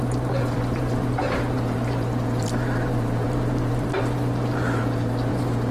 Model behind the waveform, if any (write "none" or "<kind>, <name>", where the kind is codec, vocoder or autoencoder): vocoder, BigVGAN v2